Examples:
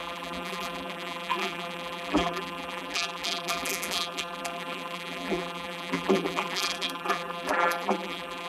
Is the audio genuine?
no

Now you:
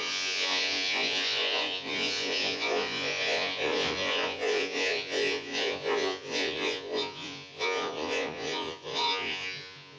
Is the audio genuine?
no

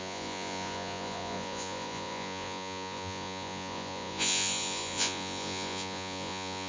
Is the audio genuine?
no